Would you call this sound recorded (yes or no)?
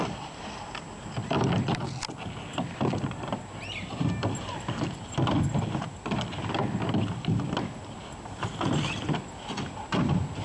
yes